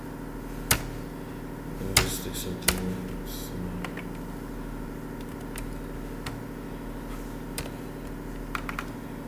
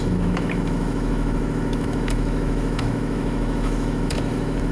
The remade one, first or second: second